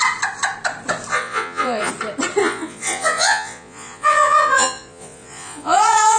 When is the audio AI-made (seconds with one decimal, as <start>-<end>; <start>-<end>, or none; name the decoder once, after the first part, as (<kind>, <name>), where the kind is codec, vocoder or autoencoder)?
1.1-1.9 (vocoder, Vocos); 2.4-6.2